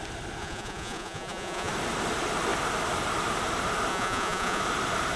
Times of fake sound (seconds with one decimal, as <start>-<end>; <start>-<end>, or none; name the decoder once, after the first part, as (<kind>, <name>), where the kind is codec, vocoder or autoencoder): 0.4-1.7 (vocoder, Vocos); 3.9-4.6